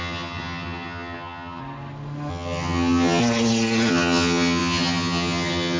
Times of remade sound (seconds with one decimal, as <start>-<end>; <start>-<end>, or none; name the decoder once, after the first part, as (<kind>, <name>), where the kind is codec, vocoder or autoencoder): 0.0-1.6 (vocoder, HiFi-GAN); 2.3-3.2; 3.9-5.8